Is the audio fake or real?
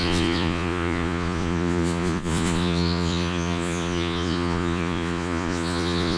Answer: fake